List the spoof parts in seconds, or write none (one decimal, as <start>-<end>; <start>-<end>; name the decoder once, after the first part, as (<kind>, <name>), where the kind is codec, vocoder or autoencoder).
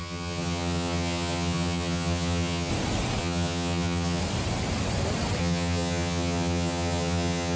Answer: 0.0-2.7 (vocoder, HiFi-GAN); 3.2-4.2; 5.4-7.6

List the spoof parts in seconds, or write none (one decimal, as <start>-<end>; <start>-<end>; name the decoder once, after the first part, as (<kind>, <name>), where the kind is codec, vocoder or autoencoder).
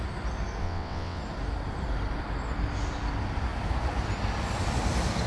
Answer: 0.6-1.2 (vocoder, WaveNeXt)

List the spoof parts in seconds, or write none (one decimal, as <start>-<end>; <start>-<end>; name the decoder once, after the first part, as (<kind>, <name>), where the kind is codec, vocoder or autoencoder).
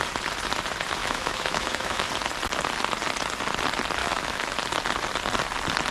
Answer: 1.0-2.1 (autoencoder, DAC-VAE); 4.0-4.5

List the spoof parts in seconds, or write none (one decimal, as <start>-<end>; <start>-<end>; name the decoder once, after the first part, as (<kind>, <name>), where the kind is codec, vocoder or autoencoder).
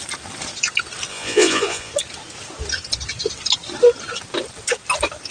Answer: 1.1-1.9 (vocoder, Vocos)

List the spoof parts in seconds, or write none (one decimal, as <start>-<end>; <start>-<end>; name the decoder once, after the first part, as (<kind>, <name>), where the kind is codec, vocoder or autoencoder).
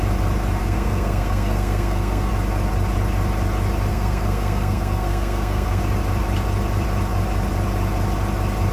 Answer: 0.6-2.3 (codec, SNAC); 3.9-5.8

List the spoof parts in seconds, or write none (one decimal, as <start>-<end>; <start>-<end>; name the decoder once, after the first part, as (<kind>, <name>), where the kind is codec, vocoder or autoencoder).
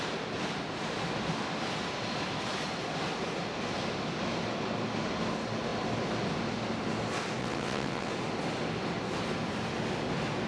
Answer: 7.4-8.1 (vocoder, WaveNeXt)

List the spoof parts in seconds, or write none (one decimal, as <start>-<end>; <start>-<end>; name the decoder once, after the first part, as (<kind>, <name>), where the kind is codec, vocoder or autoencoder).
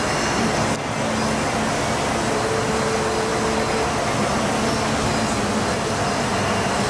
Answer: none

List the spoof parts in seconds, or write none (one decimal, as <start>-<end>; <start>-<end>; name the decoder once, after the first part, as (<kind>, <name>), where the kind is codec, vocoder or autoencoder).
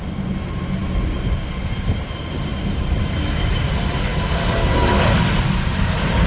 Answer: 0.0-0.8 (vocoder, BigVGAN v2); 1.8-4.1; 5.7-6.3